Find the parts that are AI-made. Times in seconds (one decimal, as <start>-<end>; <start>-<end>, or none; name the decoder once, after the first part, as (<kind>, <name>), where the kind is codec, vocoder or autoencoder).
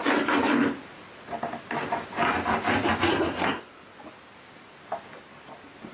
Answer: 3.1-3.7 (codec, SNAC)